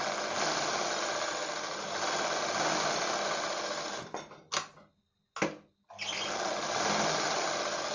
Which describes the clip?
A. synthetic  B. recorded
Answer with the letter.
B